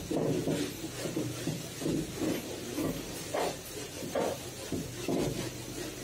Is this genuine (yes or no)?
yes